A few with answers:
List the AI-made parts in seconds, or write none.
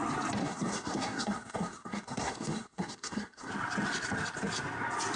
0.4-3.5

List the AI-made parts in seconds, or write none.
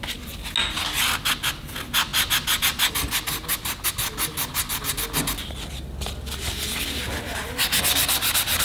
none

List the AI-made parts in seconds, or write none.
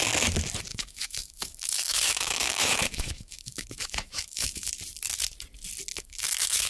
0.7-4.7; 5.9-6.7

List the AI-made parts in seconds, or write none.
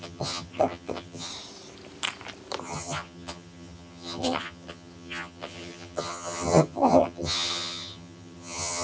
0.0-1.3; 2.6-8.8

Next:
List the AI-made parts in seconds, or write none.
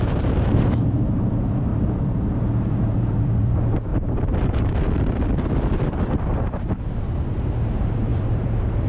0.0-1.7; 2.3-3.9; 7.3-8.9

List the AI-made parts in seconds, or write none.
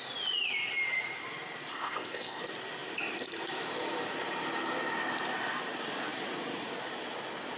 1.7-2.4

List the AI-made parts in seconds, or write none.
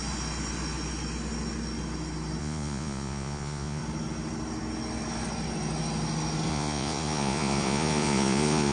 2.4-3.8; 6.5-8.7